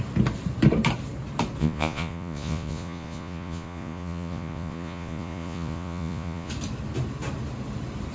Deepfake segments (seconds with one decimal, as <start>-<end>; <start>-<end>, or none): 1.6-6.5